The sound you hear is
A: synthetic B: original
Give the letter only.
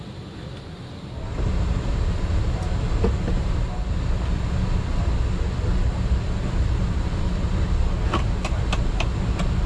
B